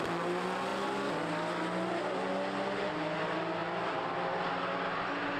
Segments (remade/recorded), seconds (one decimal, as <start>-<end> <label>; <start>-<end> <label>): 0.0-5.4 recorded